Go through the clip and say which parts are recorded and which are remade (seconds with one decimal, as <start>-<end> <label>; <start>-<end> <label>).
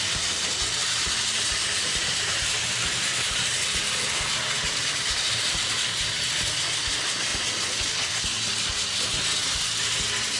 0.0-0.8 recorded; 0.8-6.1 remade; 6.1-10.4 recorded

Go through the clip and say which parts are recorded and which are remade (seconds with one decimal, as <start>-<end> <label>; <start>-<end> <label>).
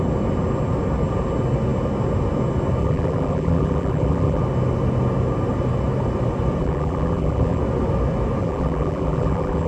0.0-2.8 recorded; 2.8-4.4 remade; 4.4-6.6 recorded; 6.6-7.6 remade; 7.6-8.4 recorded; 8.4-9.7 remade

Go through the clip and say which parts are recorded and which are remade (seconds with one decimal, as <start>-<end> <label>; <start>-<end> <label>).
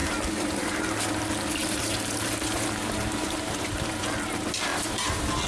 0.0-0.9 remade; 0.9-1.6 recorded; 1.6-4.0 remade; 4.0-5.5 recorded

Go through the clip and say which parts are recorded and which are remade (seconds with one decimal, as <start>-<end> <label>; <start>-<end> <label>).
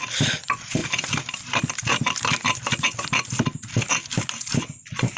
0.0-5.2 recorded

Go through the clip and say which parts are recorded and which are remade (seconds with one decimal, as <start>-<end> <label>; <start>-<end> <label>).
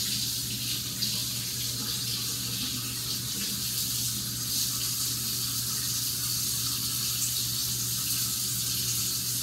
0.0-9.4 recorded